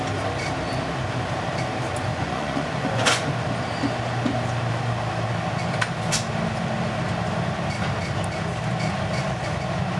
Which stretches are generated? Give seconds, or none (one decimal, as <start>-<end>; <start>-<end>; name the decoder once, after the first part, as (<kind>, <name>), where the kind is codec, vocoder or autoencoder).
2.1-3.3 (vocoder, Vocos)